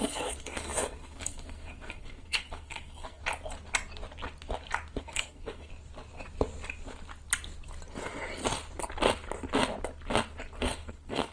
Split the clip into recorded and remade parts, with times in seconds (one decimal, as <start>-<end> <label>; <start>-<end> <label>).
0.0-3.2 remade; 3.2-5.0 recorded; 5.0-5.7 remade; 5.7-10.6 recorded; 10.6-11.3 remade